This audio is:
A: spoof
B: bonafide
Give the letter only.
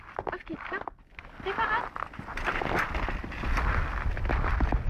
B